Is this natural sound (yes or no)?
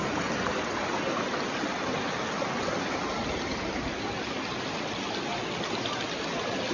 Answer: yes